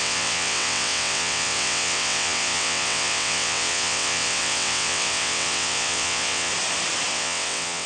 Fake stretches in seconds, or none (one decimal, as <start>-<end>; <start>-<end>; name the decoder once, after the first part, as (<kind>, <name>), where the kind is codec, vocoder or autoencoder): 0.0-6.5 (vocoder, WaveNeXt); 7.1-7.9